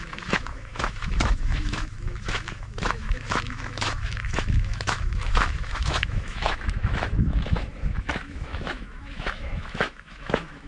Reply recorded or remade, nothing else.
remade